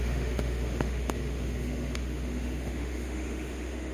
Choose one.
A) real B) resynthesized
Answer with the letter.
B